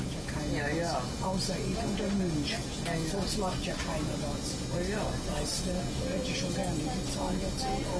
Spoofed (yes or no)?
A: no